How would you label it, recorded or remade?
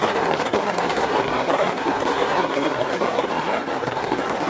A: remade